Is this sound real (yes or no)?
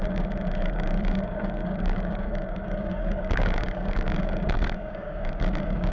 no